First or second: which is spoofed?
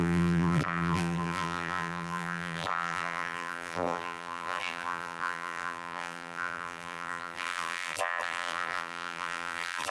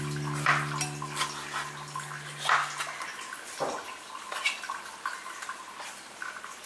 first